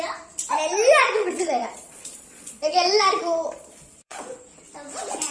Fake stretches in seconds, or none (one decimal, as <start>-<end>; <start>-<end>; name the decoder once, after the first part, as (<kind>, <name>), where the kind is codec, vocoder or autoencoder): 1.0-4.2 (vocoder, Vocos)